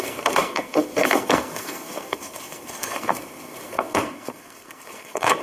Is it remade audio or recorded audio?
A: remade